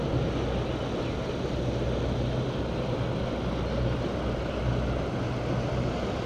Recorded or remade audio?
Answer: recorded